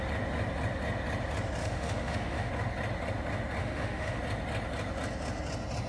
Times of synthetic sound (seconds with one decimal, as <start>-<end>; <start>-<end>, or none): 1.6-2.5; 3.6-4.2